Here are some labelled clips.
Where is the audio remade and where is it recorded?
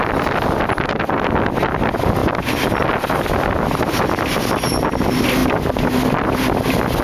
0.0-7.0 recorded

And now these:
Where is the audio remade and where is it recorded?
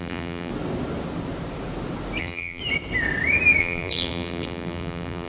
0.0-0.5 remade; 0.5-2.2 recorded; 2.2-2.6 remade; 2.6-3.6 recorded; 3.6-5.3 remade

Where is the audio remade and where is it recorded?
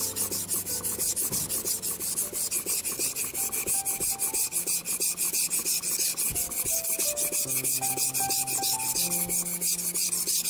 0.0-10.5 recorded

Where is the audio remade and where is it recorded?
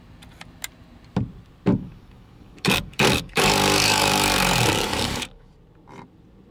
0.0-1.7 recorded; 1.7-5.5 remade; 5.5-6.5 recorded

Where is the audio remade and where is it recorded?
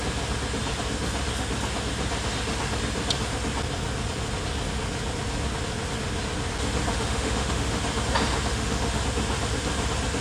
0.0-6.9 recorded; 6.9-7.8 remade; 7.8-8.5 recorded; 8.5-9.0 remade; 9.0-10.2 recorded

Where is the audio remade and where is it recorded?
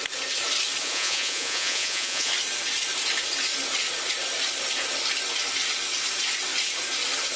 0.0-0.8 recorded; 0.8-2.3 remade; 2.3-7.4 recorded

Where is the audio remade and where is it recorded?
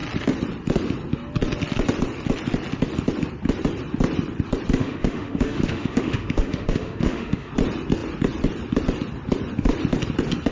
0.0-4.8 recorded; 4.8-7.5 remade; 7.5-10.5 recorded